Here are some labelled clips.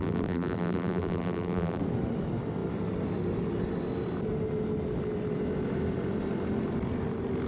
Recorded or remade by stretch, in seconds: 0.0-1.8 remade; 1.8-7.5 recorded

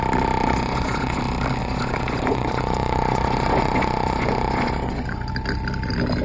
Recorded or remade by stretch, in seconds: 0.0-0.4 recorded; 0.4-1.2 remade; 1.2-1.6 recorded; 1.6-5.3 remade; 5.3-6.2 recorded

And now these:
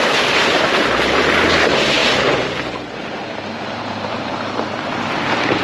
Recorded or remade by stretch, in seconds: 0.0-2.0 recorded; 2.0-5.6 remade

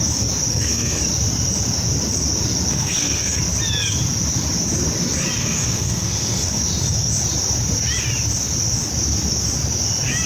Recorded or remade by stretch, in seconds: 0.0-0.5 recorded; 0.5-1.0 remade; 1.0-2.7 recorded; 2.7-3.4 remade; 3.4-5.4 recorded; 5.4-6.6 remade; 6.6-10.3 recorded